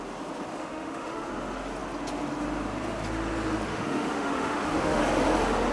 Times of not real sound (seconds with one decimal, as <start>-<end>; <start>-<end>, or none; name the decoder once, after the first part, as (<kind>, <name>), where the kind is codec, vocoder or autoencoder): 0.5-1.3 (autoencoder, DAC-VAE); 3.7-5.0